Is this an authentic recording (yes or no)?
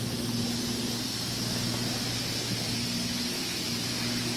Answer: yes